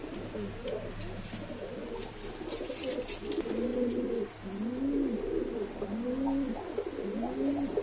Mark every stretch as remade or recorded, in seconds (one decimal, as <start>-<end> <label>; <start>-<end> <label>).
0.0-7.8 recorded